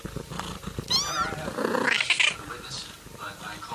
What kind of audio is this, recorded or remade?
recorded